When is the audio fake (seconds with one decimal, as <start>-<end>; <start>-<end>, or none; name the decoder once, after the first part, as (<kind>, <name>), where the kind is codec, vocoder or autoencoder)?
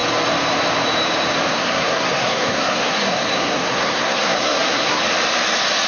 1.5-5.0 (codec, SNAC)